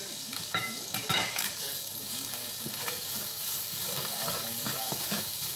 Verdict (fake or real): fake